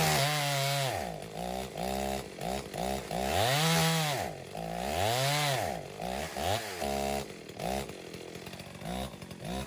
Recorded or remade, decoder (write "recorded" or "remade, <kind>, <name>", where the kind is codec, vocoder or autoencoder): recorded